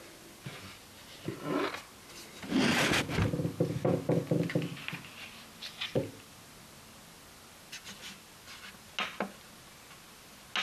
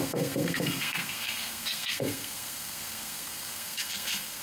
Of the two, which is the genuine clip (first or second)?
first